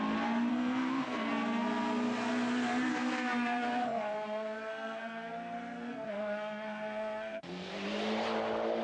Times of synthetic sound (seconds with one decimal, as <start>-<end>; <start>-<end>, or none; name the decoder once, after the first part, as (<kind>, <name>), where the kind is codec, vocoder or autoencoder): 0.5-1.3 (codec, SNAC); 2.9-7.7